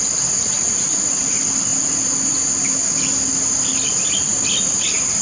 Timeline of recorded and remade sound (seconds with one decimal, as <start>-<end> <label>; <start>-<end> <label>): 0.0-5.2 recorded